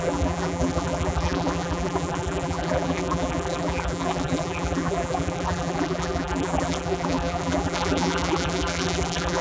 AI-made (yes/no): yes